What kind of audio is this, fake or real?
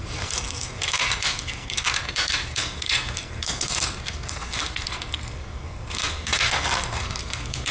fake